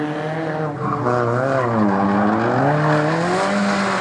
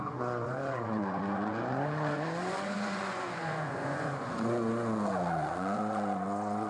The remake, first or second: second